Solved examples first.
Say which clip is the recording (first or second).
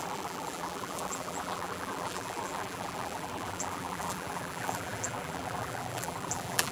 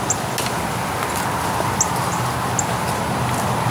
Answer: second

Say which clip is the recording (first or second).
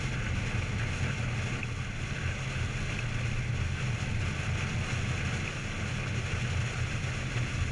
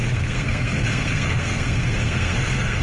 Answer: first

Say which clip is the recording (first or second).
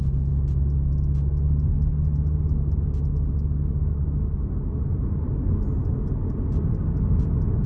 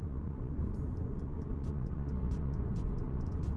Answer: first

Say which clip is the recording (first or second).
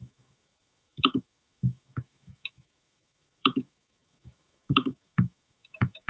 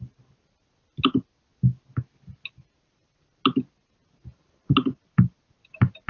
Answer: second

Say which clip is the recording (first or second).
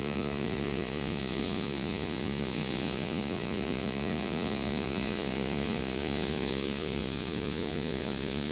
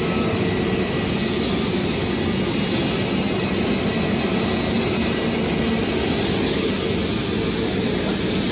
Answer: second